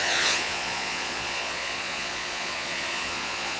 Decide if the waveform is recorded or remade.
remade